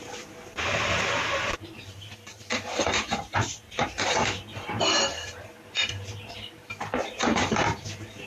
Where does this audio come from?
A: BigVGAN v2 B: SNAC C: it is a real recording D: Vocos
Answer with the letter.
A